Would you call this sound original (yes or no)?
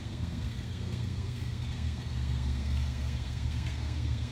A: no